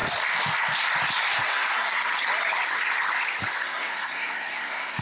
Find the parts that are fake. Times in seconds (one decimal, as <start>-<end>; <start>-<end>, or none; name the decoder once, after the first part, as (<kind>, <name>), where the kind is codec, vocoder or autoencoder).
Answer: 1.4-2.1 (codec, SNAC); 3.6-5.0